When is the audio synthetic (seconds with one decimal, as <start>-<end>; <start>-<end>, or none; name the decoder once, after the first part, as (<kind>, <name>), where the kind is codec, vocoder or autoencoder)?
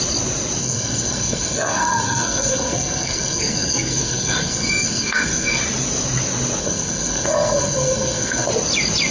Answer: 0.6-5.6 (codec, SNAC); 6.6-8.5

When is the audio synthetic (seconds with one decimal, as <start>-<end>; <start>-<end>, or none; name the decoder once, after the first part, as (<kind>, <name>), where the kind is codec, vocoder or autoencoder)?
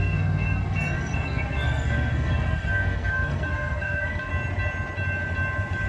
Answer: 0.0-4.3 (codec, SNAC)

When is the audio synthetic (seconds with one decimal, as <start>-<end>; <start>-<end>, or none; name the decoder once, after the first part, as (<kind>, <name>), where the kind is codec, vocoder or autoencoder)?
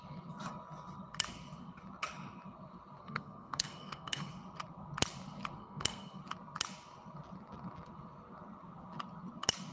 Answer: 3.0-4.3 (codec, SNAC); 5.6-6.2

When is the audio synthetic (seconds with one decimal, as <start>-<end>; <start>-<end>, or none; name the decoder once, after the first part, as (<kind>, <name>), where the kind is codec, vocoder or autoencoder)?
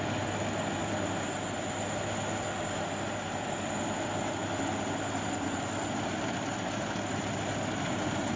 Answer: none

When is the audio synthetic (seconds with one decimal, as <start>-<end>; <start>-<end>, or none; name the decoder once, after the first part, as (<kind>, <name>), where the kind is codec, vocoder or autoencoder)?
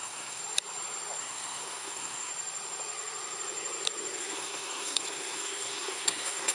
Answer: 0.0-0.4 (codec, SNAC); 1.2-2.3; 4.2-6.5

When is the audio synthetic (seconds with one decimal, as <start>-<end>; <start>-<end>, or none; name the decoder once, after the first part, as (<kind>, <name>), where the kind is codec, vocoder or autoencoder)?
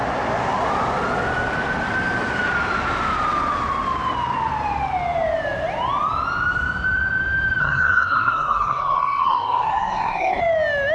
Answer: 7.6-10.4 (codec, SNAC)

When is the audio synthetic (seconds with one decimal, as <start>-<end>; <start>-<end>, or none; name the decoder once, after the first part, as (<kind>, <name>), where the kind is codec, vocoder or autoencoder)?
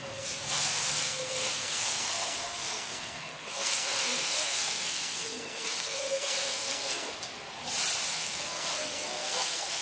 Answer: 0.0-7.3 (codec, SNAC); 8.1-9.8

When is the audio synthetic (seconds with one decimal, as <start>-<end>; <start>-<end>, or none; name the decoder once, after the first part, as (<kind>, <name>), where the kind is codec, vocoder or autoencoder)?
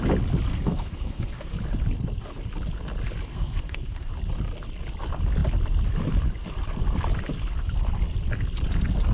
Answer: 0.5-1.5 (codec, SNAC); 3.3-4.1